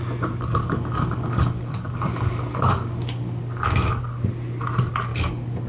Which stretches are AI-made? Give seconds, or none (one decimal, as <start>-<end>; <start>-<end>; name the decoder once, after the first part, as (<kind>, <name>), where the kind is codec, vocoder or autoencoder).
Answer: 0.6-4.0 (codec, DAC); 5.1-5.7